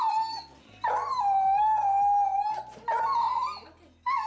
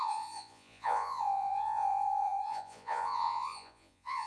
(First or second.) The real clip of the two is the first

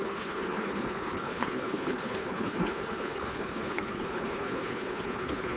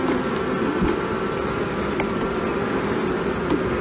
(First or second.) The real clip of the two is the second